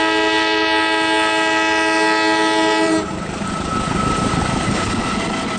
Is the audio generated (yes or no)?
no